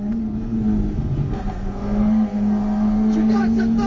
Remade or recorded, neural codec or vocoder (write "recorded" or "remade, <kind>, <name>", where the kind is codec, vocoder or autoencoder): remade, codec, SNAC